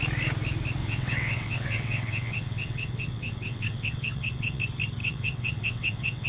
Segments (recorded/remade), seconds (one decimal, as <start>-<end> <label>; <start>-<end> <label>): 0.0-0.8 recorded; 0.8-4.6 remade; 4.6-5.0 recorded; 5.0-6.3 remade